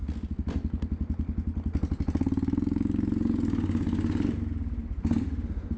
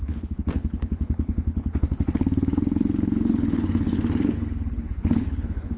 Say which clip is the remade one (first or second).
second